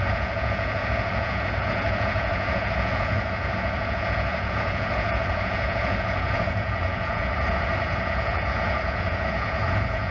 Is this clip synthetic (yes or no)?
yes